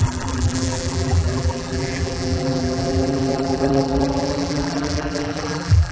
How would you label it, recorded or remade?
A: remade